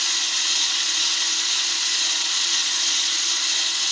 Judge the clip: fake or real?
fake